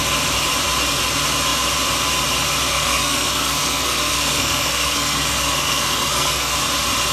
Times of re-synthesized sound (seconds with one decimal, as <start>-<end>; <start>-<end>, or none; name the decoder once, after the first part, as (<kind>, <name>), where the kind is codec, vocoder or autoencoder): 2.7-6.6 (codec, SNAC)